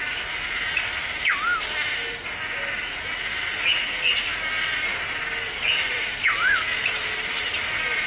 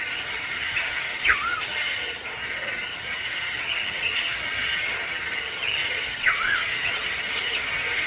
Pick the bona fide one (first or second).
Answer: first